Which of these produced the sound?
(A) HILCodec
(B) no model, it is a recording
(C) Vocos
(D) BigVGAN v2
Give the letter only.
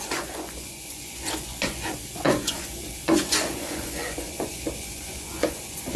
C